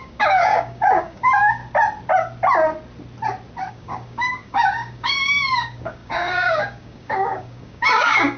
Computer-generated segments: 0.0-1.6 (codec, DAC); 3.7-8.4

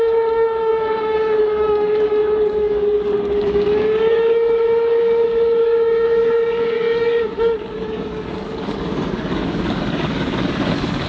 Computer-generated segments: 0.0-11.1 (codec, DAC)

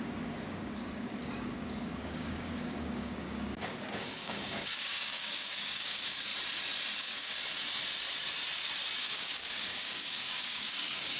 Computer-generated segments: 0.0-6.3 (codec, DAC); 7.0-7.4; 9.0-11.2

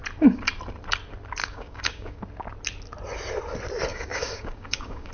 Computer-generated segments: 1.4-2.2 (codec, DAC); 3.9-5.1